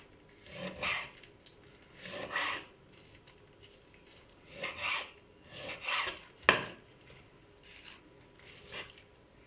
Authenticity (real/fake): real